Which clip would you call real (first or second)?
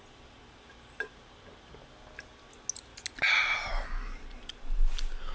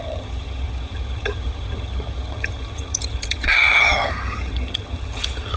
first